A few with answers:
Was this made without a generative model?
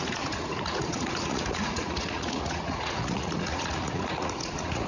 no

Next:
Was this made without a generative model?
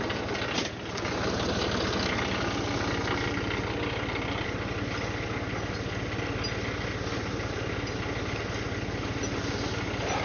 yes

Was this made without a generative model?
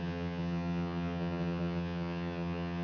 no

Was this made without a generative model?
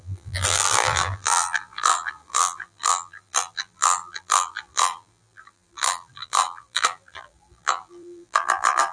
no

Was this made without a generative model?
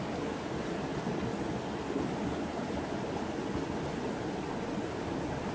yes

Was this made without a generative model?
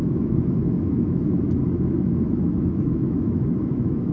no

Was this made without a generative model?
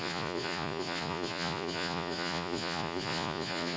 no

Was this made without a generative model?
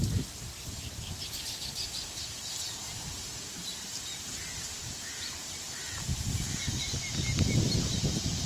no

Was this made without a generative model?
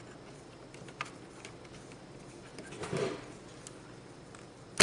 yes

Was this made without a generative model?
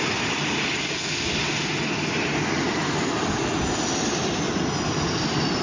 yes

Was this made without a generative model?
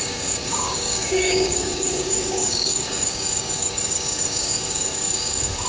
no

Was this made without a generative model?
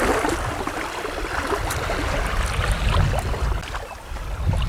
yes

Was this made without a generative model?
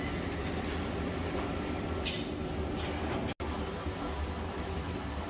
yes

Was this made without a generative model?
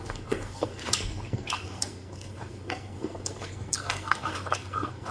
no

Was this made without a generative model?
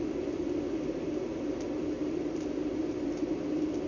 yes